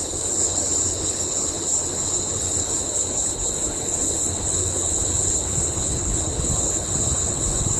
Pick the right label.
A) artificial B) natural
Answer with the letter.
A